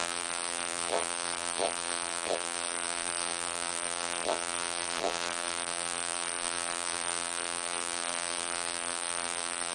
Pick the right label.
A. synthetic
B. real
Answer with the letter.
A